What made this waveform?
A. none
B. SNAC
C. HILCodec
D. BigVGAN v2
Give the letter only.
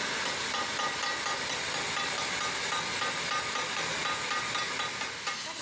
A